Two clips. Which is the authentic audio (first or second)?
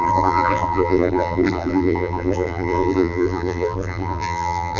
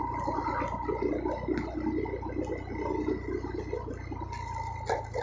second